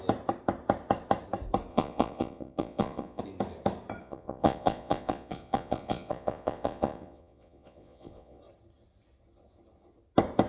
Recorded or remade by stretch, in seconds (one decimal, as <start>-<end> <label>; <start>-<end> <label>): 0.0-1.7 recorded; 1.7-3.2 remade; 3.2-4.0 recorded; 4.0-8.4 remade; 8.4-10.5 recorded